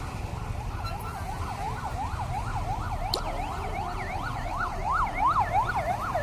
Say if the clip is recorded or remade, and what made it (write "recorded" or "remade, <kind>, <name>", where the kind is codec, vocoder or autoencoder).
recorded